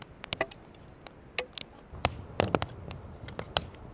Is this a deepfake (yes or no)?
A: no